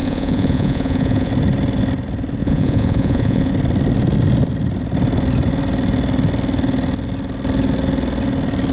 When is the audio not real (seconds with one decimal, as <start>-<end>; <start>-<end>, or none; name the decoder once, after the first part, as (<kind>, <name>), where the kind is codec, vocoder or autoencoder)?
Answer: 0.0-1.3 (vocoder, Vocos); 2.4-3.5

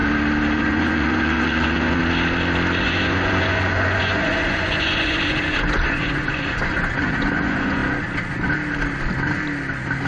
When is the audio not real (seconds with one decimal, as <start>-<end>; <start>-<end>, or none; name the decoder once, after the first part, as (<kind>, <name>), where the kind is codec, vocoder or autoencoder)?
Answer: 0.6-2.0 (vocoder, Vocos); 2.8-7.8

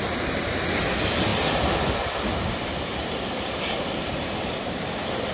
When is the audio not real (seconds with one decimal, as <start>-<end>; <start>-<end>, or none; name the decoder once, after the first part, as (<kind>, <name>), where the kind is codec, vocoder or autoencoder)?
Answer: none

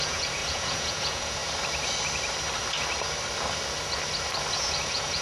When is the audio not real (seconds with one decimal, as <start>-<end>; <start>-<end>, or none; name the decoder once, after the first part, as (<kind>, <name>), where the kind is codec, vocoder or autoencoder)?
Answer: 0.0-1.4 (vocoder, Vocos); 4.5-5.2

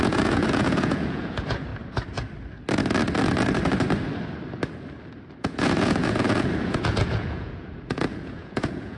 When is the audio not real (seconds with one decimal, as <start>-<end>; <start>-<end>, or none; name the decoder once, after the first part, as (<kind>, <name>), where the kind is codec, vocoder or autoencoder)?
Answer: 0.0-1.7 (vocoder, Vocos); 5.4-9.0

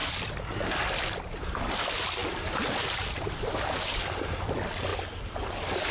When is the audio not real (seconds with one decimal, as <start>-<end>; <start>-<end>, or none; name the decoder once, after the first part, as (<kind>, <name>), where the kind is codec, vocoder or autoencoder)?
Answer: none

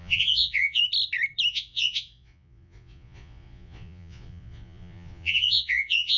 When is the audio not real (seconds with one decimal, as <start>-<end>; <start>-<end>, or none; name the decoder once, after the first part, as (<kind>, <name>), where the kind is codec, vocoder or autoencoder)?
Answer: 0.0-0.8 (vocoder, Vocos); 1.5-6.2